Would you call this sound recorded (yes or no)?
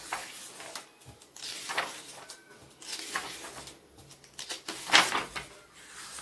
yes